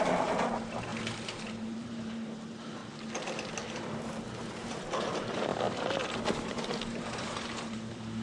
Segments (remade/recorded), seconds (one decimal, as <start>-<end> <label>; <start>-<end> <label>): 0.0-0.9 remade; 0.9-1.5 recorded; 1.5-2.8 remade; 2.8-3.5 recorded; 3.5-5.5 remade; 5.5-6.3 recorded; 6.3-8.2 remade